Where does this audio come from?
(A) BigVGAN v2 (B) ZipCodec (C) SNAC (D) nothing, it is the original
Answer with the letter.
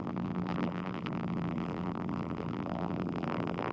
A